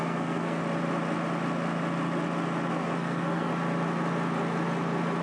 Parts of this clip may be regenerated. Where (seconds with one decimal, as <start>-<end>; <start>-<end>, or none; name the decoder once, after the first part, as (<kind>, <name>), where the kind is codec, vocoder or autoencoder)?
0.0-0.6 (codec, SNAC); 2.7-3.5